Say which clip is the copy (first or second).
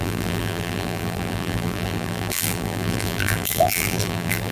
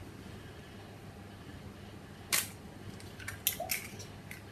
first